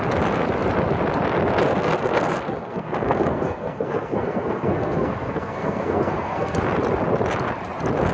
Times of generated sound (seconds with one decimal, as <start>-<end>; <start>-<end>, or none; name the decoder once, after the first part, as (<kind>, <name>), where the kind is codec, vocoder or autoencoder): 1.7-6.6 (codec, SNAC)